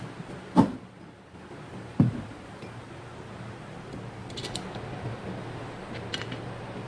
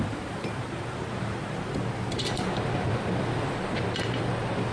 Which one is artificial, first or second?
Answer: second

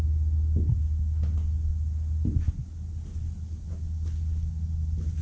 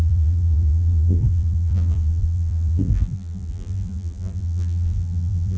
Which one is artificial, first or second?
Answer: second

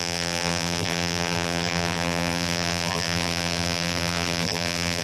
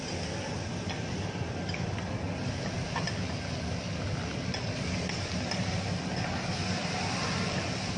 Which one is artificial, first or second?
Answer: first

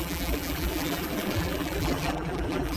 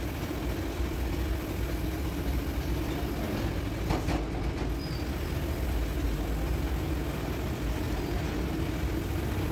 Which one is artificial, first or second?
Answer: first